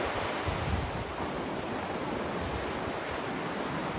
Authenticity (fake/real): real